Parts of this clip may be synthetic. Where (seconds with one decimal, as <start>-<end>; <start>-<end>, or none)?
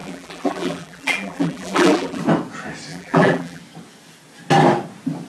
0.0-2.2; 2.9-3.6